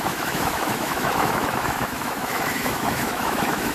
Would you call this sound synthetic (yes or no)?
yes